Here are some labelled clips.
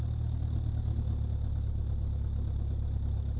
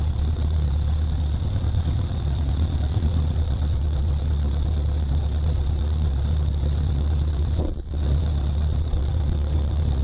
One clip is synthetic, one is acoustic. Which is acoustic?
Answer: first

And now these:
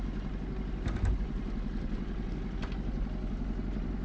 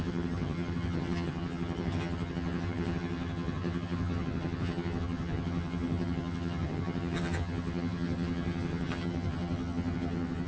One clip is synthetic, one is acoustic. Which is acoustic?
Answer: first